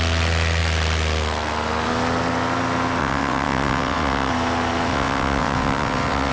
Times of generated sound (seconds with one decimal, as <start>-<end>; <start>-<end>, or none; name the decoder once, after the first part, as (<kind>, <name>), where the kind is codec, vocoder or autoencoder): 3.0-4.3 (vocoder, WaveNeXt); 4.9-6.3